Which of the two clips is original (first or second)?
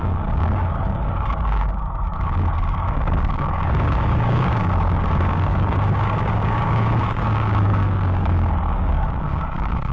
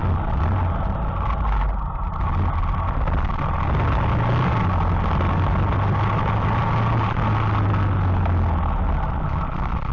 second